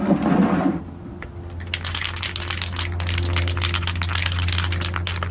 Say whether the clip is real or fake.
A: real